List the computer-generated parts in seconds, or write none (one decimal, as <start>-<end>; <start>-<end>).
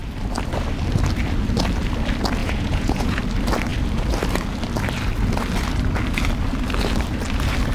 2.4-3.2